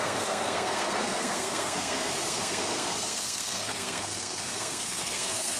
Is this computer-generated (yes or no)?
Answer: yes